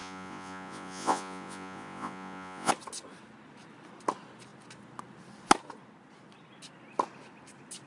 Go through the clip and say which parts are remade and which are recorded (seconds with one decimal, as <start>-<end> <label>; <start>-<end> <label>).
0.0-2.7 remade; 2.7-7.9 recorded